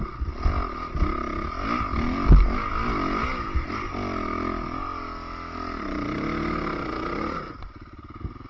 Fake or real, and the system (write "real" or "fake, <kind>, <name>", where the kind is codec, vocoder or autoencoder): real